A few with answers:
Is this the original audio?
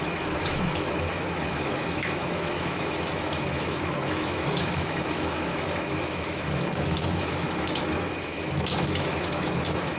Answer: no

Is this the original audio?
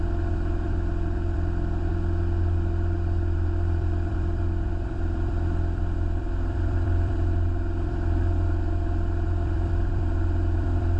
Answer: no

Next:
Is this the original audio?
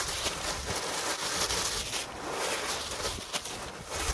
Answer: yes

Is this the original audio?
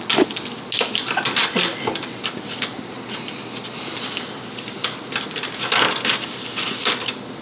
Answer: yes